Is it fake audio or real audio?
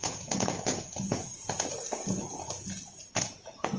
fake